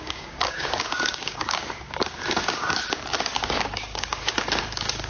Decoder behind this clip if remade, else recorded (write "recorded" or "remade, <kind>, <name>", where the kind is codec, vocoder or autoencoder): remade, codec, DAC